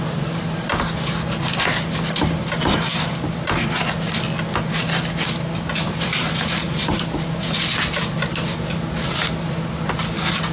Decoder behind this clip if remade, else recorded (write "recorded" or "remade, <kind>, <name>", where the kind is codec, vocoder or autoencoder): recorded